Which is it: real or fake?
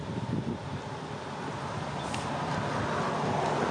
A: real